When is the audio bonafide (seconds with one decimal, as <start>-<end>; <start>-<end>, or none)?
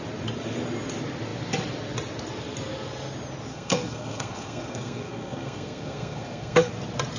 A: 0.0-3.5; 6.7-7.2